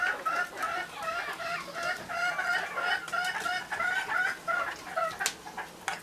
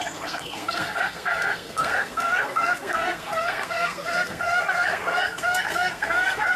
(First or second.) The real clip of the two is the first